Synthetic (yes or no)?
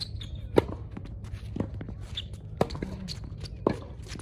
no